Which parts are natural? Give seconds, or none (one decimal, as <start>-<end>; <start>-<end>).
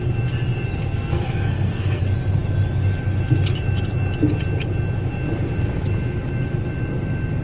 0.0-0.9; 2.0-7.4